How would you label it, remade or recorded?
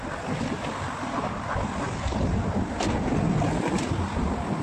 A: remade